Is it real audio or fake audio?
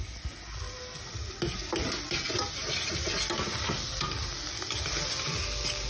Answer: real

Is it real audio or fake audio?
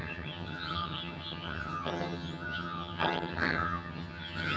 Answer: fake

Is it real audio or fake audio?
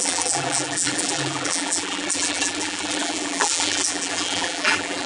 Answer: fake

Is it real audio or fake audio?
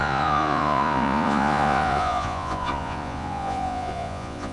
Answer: fake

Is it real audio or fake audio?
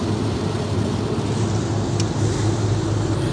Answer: real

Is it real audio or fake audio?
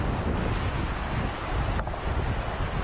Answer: real